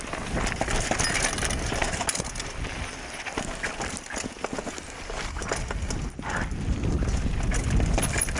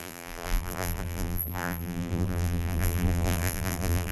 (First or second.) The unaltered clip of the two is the first